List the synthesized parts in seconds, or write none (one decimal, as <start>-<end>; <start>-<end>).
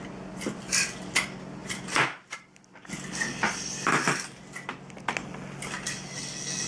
none